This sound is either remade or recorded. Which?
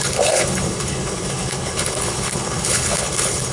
remade